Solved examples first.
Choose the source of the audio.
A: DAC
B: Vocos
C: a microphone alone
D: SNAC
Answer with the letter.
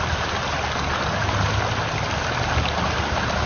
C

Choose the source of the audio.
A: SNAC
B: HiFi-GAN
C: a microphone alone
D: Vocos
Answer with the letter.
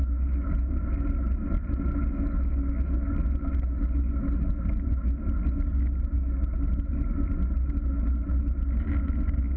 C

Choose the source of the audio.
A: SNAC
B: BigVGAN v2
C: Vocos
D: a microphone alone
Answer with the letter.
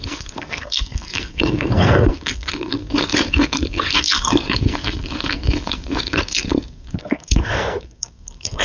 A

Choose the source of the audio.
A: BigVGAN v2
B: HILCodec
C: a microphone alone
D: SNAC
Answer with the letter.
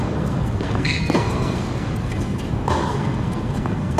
D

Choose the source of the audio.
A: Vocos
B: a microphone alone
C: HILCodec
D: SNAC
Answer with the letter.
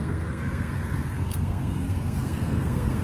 D